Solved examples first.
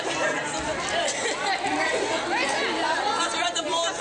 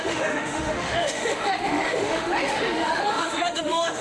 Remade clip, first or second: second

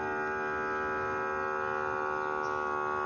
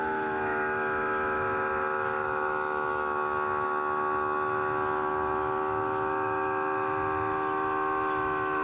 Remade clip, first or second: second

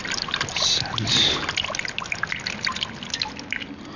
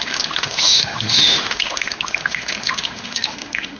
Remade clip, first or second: second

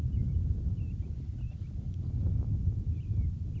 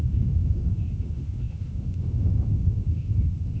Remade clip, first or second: second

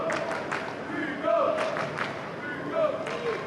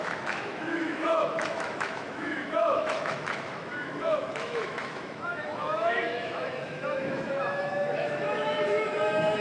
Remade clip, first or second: second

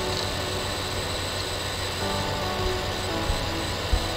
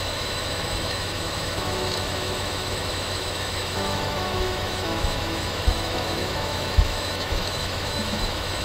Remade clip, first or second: second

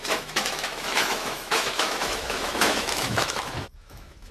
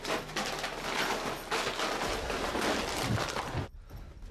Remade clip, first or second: first